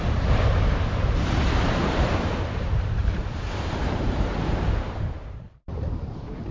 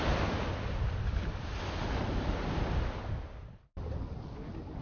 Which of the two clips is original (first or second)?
second